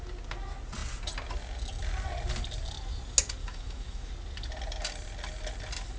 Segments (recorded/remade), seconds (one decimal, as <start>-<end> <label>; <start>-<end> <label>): 0.0-3.4 recorded; 3.4-4.1 remade; 4.1-6.0 recorded